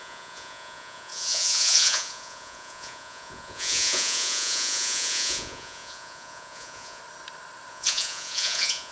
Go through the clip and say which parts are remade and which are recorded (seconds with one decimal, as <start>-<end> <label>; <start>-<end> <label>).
0.0-7.0 remade; 7.0-7.7 recorded; 7.7-8.9 remade